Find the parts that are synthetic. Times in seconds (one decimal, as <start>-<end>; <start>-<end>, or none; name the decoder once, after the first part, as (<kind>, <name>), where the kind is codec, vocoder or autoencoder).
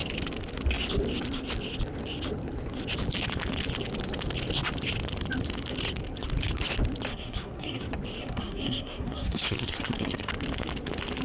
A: 7.1-7.8 (codec, SNAC); 8.2-10.3